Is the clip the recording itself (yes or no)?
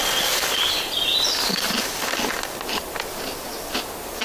yes